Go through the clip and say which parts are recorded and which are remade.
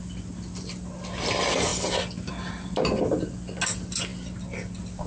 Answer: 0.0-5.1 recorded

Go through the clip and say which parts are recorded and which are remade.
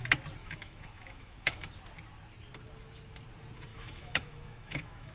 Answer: 0.0-0.4 recorded; 0.4-1.7 remade; 1.7-3.7 recorded; 3.7-5.1 remade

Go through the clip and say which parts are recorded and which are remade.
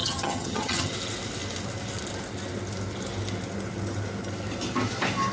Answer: 0.0-0.9 remade; 0.9-5.3 recorded